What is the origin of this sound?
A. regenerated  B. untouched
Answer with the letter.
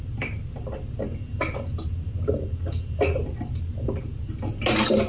B